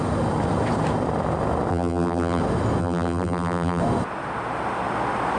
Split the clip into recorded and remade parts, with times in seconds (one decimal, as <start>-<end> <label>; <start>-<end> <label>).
0.0-1.7 recorded; 1.7-2.4 remade; 2.4-2.8 recorded; 2.8-3.8 remade; 3.8-5.4 recorded